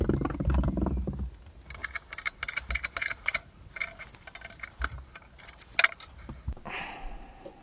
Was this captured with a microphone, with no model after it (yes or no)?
yes